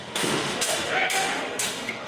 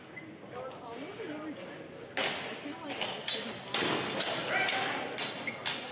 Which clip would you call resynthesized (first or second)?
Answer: first